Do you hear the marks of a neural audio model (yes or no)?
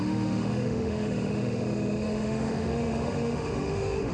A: yes